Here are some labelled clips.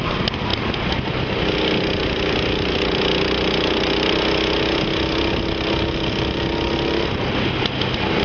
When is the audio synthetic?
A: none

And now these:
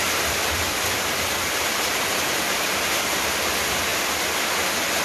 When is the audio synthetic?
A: none

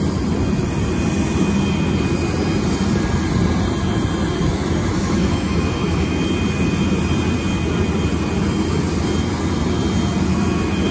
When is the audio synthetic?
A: 4.4-6.2 (autoencoder, DAC-VAE)